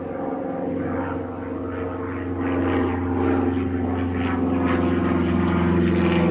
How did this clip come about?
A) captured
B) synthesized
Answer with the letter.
A